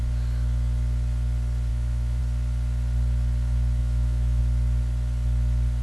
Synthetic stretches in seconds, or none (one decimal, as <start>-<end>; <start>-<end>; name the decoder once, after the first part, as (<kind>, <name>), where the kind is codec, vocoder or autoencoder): 1.7-2.2 (autoencoder, DAC-VAE); 3.8-4.4